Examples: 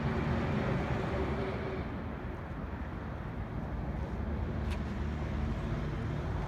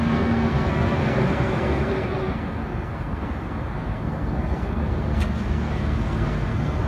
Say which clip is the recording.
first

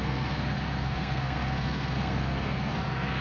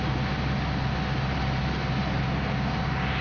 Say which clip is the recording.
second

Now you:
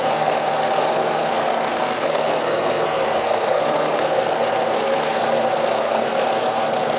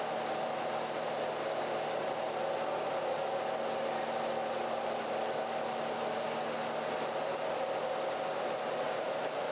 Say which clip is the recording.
second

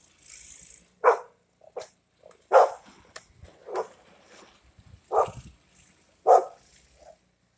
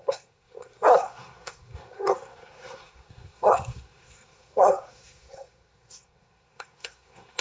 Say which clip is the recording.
first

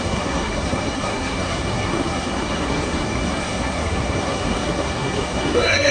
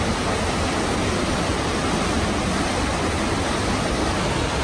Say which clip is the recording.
second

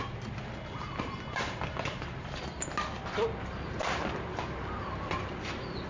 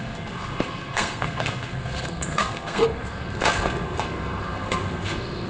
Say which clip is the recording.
first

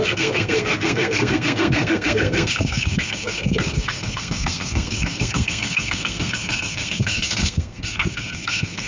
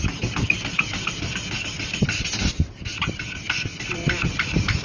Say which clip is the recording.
second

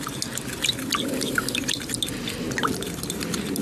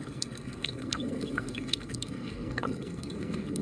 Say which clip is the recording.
first